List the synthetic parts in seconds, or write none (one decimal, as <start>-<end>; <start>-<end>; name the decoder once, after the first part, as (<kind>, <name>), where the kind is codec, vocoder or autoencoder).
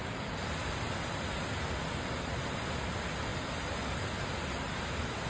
none